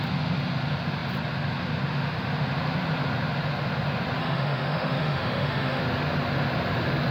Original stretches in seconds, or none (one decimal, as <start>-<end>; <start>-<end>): 0.0-4.2; 5.8-7.1